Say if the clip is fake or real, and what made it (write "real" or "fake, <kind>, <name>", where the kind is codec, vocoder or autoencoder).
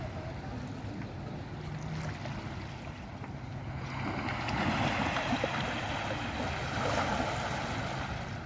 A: real